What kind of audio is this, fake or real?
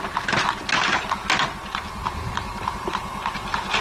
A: real